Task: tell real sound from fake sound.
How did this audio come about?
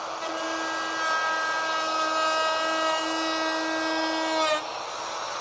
real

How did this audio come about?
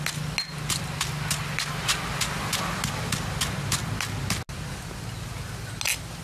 real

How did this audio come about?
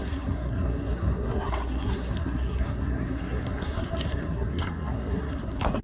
fake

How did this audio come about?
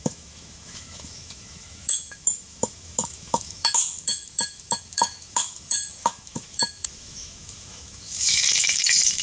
fake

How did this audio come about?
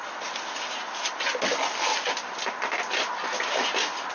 real